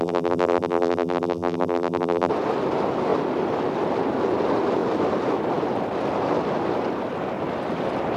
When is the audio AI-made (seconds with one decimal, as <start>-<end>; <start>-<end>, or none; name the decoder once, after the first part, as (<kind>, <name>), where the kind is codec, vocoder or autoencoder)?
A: 0.0-2.3 (vocoder, BigVGAN v2)